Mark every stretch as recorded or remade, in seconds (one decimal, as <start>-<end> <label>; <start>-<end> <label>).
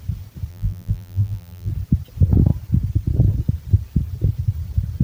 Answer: 0.0-0.5 recorded; 0.5-1.7 remade; 1.7-5.0 recorded